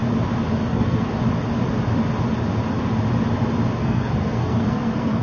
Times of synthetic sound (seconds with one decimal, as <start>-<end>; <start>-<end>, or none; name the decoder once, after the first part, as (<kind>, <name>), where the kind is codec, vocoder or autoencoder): 0.7-1.1 (codec, SNAC); 3.8-5.2